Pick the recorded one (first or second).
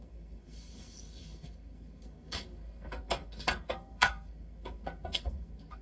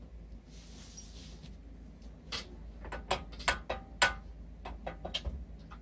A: second